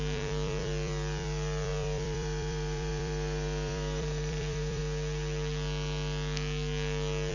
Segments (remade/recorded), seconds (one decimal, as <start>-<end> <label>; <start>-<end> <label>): 0.0-4.8 remade; 4.8-7.3 recorded